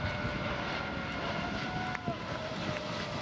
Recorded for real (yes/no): yes